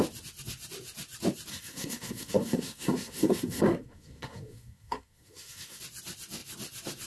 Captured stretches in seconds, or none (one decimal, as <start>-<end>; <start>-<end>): 0.0-1.5; 5.8-7.1